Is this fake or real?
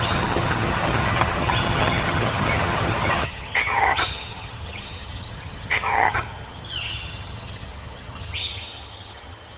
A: fake